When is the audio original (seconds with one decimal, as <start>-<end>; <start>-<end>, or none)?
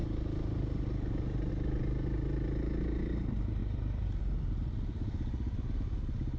0.0-3.6; 4.2-6.4